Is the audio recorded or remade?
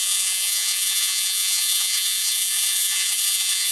remade